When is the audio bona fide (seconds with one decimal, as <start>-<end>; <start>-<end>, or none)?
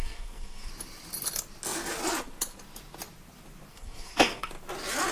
0.7-3.7; 4.5-5.1